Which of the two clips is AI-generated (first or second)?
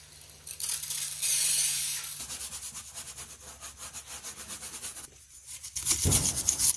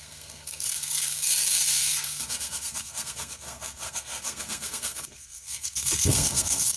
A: second